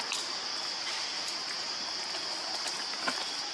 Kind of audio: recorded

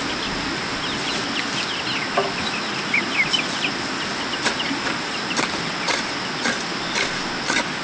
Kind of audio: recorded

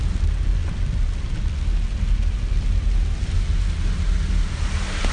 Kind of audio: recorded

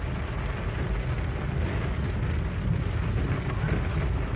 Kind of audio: recorded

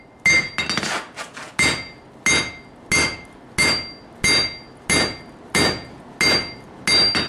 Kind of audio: recorded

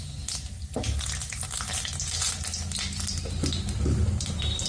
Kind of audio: recorded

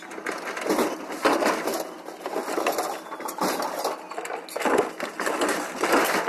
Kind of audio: recorded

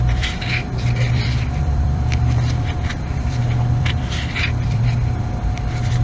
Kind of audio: remade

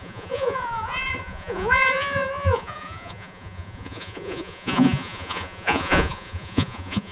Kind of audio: remade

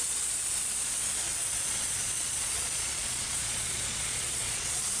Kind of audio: remade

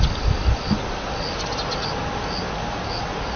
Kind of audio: recorded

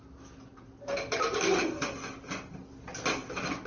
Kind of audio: recorded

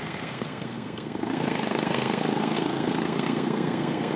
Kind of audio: remade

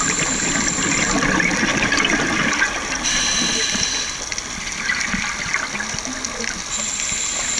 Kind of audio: recorded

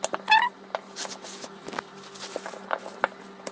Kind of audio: recorded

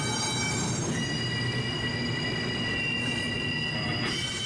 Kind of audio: recorded